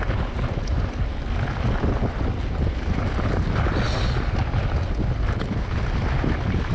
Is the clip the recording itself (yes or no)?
yes